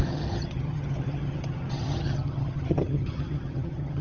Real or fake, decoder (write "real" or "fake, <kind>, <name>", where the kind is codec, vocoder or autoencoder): fake, vocoder, HiFi-GAN